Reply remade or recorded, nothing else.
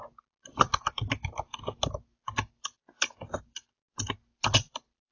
recorded